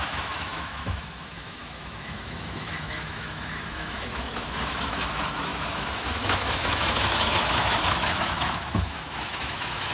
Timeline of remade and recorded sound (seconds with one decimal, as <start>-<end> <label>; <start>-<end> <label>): 0.0-9.9 remade